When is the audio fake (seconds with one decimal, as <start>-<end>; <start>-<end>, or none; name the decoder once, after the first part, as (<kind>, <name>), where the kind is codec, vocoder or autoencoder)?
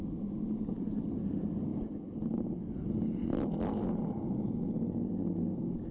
none